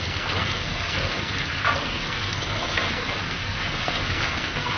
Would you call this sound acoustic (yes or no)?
no